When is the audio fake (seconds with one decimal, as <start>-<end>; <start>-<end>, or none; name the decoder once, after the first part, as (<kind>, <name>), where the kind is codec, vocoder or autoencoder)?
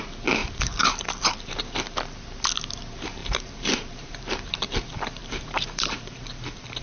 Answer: 0.4-1.9 (vocoder, BigVGAN v2); 3.2-4.7; 5.2-6.8